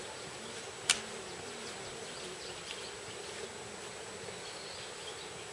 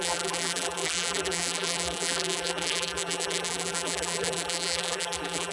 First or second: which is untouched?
first